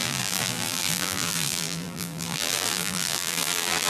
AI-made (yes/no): yes